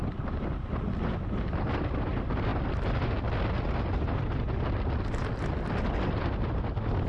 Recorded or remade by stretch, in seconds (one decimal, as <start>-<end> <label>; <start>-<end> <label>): 0.0-0.7 remade; 0.7-7.1 recorded